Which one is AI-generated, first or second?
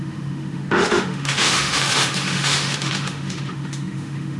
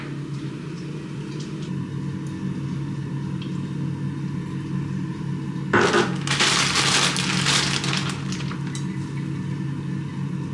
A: first